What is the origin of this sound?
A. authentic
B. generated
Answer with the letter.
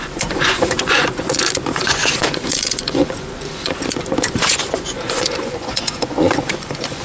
B